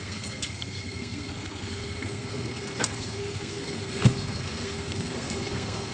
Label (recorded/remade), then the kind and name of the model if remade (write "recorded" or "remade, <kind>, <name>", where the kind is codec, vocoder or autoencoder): remade, codec, SNAC